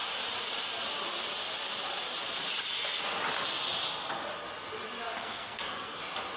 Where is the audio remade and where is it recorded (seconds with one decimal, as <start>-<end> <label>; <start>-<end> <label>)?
0.0-5.2 recorded; 5.2-6.0 remade; 6.0-6.4 recorded